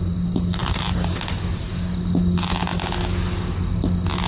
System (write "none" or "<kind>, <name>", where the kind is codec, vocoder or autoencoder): none